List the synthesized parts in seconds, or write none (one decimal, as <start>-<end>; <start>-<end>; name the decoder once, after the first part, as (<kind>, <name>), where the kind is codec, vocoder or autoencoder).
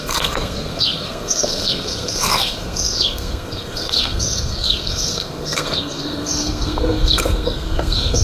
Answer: 0.0-8.2 (codec, SNAC)